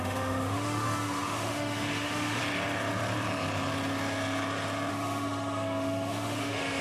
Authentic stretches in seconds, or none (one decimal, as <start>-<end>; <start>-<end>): 2.4-4.9